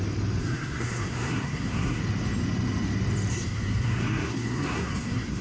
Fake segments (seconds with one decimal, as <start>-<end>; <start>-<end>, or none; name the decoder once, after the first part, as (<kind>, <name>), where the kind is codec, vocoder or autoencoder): 0.4-2.0 (codec, SNAC); 3.3-5.4